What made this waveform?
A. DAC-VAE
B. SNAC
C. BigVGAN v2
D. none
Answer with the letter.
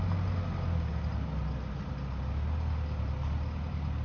D